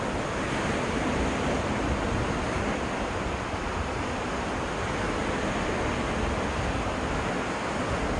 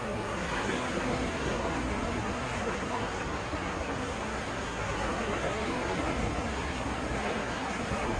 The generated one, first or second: second